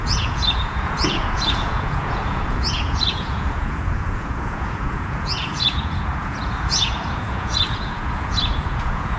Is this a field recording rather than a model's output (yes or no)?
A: no